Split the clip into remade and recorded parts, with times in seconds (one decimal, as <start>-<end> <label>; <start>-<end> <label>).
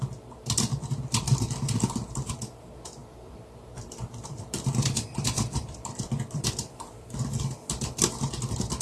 0.0-3.0 recorded; 3.0-7.4 remade; 7.4-8.8 recorded